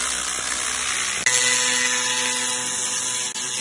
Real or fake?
real